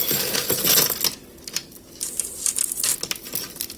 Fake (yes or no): no